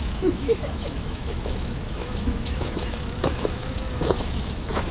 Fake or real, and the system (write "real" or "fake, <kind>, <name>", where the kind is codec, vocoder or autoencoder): fake, autoencoder, DAC-VAE